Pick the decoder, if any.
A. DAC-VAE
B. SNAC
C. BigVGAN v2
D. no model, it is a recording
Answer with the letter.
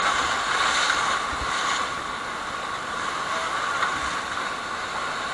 D